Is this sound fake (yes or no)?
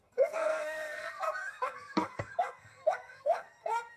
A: yes